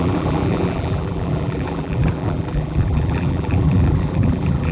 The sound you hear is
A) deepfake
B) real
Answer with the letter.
A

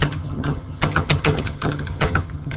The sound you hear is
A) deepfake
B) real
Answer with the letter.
A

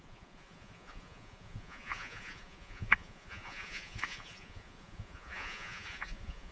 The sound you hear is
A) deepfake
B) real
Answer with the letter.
A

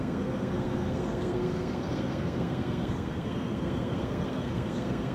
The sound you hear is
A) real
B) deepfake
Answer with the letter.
B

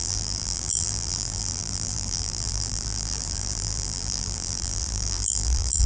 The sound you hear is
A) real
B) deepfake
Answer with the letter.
B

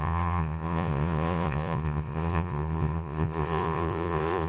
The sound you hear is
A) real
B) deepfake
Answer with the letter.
B